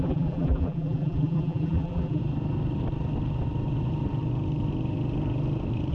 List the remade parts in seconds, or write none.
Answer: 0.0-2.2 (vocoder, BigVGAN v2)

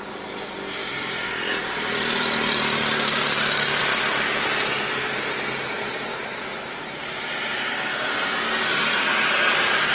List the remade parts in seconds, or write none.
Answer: 0.8-3.8 (vocoder, BigVGAN v2); 6.1-8.2

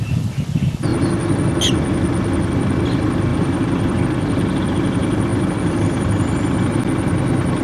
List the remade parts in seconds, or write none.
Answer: 3.3-4.0 (vocoder, BigVGAN v2); 5.3-6.8

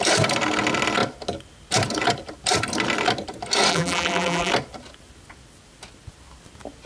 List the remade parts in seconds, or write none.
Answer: 3.7-4.5 (vocoder, BigVGAN v2)

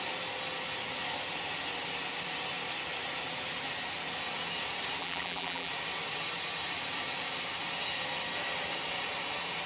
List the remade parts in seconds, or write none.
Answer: 5.0-5.7 (vocoder, BigVGAN v2)